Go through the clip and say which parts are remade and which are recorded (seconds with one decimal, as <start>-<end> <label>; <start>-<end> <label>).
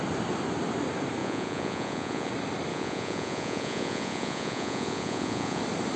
0.0-1.2 recorded; 1.2-2.3 remade; 2.3-2.7 recorded; 2.7-5.6 remade; 5.6-6.0 recorded